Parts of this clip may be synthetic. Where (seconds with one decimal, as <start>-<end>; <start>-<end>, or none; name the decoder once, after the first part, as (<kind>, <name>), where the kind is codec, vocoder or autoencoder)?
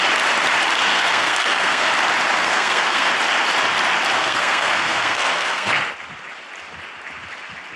0.9-1.9 (codec, SNAC); 2.4-3.1; 4.2-5.7